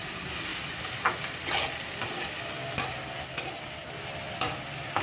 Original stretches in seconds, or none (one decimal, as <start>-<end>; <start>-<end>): 0.0-5.0